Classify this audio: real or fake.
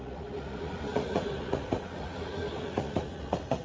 fake